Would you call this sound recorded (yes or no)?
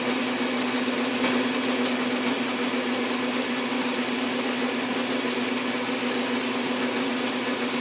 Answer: yes